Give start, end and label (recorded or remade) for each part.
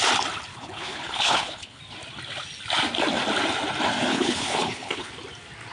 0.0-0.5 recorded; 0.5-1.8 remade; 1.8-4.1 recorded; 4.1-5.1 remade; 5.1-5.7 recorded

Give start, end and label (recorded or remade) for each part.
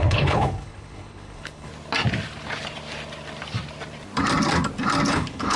0.0-1.7 remade; 1.7-5.1 recorded; 5.1-5.6 remade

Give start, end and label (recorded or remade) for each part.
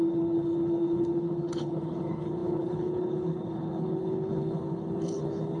0.0-5.6 remade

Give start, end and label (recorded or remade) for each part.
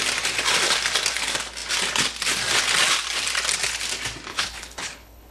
0.0-4.3 recorded; 4.3-5.3 remade